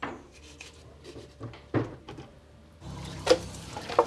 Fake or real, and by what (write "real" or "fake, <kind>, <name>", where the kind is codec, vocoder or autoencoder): real